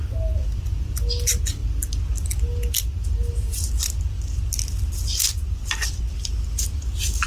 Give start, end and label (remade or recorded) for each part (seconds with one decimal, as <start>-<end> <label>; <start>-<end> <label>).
0.0-7.3 recorded